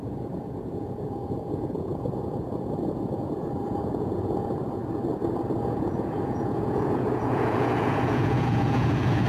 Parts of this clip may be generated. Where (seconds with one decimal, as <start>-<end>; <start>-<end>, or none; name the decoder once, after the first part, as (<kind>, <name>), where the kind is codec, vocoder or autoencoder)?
0.0-4.8 (vocoder, Vocos); 5.6-9.3